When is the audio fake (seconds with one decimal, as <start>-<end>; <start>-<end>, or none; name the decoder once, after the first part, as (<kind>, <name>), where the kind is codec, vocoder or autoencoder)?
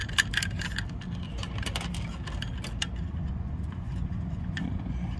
3.1-5.2 (vocoder, Vocos)